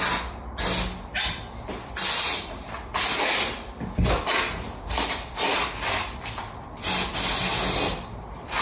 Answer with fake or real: real